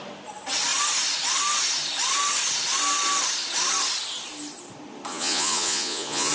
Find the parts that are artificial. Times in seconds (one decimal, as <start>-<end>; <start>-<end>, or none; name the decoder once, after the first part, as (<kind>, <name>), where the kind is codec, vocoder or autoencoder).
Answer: 5.1-6.3 (vocoder, Vocos)